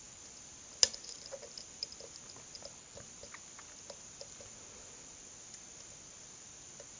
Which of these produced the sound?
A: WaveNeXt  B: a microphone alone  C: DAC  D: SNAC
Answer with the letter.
B